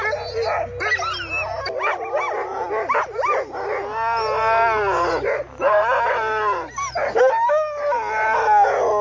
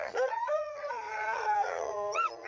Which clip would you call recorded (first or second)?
first